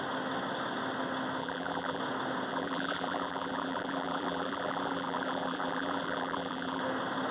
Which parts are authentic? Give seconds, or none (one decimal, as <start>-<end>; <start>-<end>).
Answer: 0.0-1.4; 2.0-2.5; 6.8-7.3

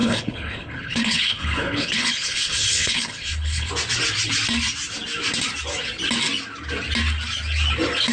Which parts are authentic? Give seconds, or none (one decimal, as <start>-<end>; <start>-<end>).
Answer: 3.7-8.1

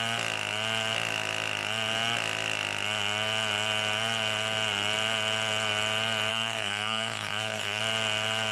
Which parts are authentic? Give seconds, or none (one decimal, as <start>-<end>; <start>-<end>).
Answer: 0.0-6.3; 7.8-8.5